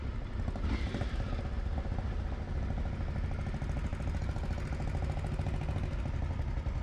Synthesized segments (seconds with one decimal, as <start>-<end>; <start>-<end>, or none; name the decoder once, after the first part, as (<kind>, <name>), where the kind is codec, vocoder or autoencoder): 0.0-2.1 (vocoder, BigVGAN v2)